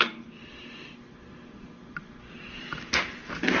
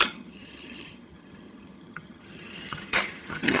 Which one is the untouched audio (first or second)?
first